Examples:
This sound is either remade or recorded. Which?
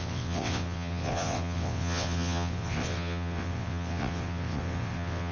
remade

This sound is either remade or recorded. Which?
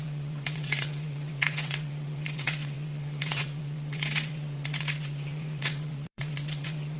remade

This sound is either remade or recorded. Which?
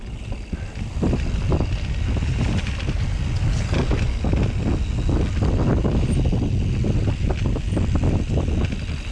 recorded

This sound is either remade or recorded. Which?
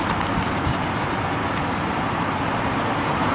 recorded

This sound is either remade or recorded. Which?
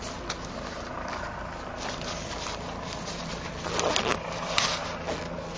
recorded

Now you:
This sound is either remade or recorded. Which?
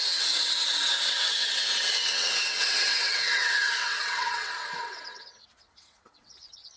remade